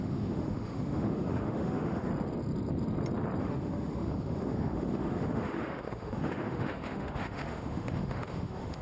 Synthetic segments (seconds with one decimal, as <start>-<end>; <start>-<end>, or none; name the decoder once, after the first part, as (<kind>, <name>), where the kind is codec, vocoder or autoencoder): 0.0-2.1 (autoencoder, DAC-VAE); 3.4-8.8